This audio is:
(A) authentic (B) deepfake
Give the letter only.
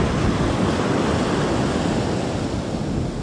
A